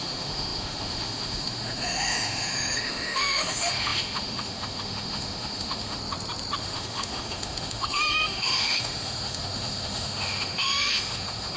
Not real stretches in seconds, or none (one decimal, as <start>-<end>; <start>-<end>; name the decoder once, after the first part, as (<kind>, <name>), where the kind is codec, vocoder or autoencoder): 0.0-6.0 (autoencoder, DAC-VAE); 6.6-11.6